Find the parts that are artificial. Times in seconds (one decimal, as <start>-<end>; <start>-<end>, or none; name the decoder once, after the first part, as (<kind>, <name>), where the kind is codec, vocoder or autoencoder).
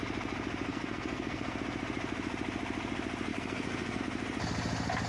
0.7-1.6 (codec, SNAC); 3.3-4.0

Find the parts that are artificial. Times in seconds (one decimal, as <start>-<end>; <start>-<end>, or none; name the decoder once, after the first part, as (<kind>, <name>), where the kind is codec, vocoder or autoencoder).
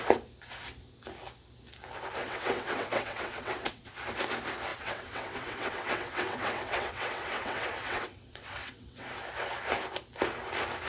2.2-3.9 (vocoder, WaveNeXt); 4.7-9.2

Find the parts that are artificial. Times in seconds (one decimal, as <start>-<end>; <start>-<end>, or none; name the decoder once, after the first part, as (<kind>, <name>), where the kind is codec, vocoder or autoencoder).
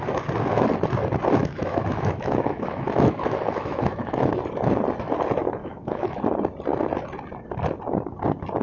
1.4-4.3 (autoencoder, DAC-VAE); 5.6-6.2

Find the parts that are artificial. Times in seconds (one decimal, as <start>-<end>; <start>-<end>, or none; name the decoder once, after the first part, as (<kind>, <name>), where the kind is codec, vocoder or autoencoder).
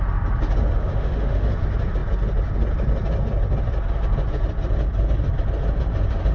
0.8-1.5 (autoencoder, DAC-VAE)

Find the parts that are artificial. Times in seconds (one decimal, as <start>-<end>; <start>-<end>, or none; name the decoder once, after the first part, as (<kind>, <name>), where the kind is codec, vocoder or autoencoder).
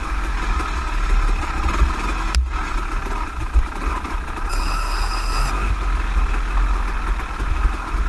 4.5-5.5 (codec, SNAC)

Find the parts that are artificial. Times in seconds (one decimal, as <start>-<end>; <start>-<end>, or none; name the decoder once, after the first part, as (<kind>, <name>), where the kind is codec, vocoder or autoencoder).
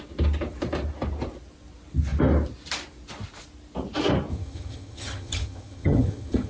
4.3-6.5 (vocoder, HiFi-GAN)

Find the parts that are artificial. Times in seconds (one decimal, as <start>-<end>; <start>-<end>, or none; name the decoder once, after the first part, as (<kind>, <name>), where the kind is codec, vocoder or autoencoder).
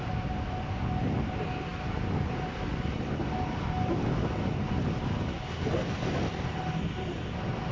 none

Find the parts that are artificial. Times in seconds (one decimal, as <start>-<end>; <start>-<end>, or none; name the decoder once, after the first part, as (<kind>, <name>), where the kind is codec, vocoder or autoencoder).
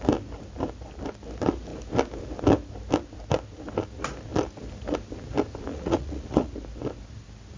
5.7-6.5 (vocoder, Vocos)